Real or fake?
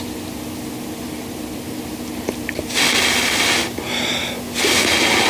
real